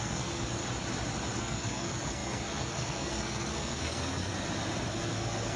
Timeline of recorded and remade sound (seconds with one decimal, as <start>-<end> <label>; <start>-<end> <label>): 0.0-0.6 remade; 0.6-1.4 recorded; 1.4-4.3 remade; 4.3-4.9 recorded; 4.9-5.6 remade